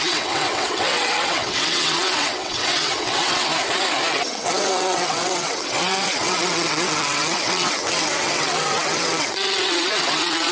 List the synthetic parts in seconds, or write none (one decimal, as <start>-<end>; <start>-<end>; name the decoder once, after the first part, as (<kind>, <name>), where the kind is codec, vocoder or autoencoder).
0.0-3.5 (vocoder, WaveNeXt); 4.1-10.5